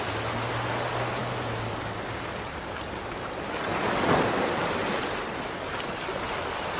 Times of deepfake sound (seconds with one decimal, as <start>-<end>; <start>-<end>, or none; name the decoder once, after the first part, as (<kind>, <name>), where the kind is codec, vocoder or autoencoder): none